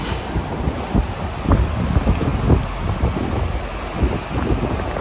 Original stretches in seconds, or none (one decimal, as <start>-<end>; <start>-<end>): 0.0-5.0